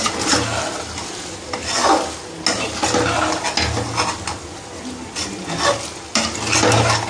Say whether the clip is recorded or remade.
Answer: recorded